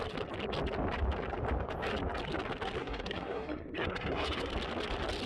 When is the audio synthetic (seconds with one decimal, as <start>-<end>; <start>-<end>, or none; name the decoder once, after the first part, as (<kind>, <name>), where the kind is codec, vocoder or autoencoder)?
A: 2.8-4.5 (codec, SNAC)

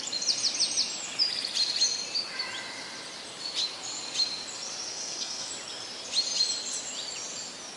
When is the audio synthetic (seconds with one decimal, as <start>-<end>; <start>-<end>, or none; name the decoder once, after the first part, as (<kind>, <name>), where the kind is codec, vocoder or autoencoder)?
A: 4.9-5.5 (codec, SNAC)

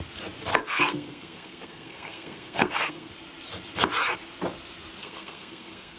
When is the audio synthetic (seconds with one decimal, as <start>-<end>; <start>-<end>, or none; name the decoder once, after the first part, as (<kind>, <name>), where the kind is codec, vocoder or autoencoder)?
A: 0.5-3.1 (codec, SNAC); 5.0-6.0

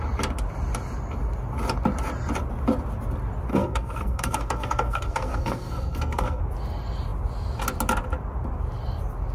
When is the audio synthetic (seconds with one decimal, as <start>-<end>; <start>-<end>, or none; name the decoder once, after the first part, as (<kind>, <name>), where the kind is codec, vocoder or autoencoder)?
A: 3.5-6.4 (codec, SNAC)

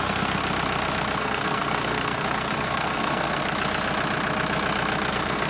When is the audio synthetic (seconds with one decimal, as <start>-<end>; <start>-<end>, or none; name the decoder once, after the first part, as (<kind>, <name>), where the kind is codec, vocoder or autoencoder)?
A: 0.0-0.4 (codec, SNAC); 1.2-3.4; 5.1-5.5

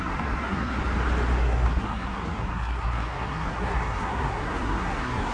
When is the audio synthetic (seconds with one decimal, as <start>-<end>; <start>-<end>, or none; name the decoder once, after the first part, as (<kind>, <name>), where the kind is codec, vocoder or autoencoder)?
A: 0.0-0.8 (codec, SNAC); 1.4-5.3